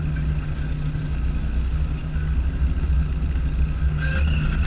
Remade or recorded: recorded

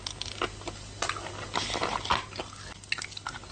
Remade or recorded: recorded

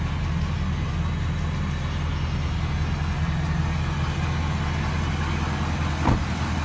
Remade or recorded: recorded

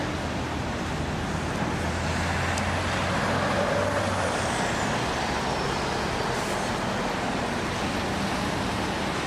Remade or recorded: recorded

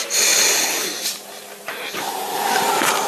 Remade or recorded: recorded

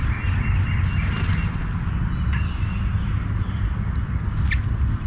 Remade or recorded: recorded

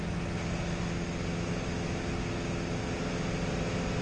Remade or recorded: recorded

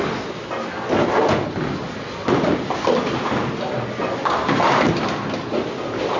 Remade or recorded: recorded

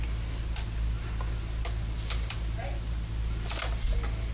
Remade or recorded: recorded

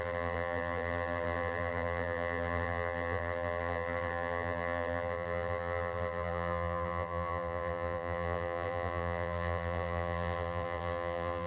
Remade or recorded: remade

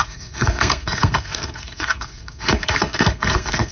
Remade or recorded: remade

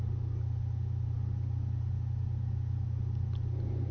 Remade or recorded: recorded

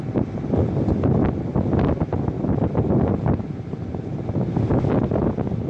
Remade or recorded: recorded